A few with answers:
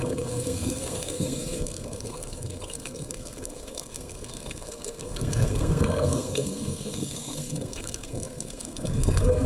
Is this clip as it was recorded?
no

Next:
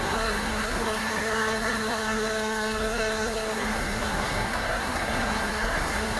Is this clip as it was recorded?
no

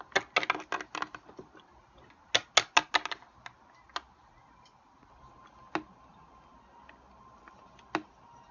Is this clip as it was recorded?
yes